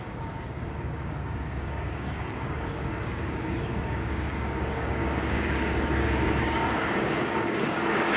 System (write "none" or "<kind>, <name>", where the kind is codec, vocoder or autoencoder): codec, DAC